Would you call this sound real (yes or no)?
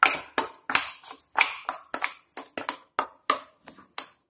yes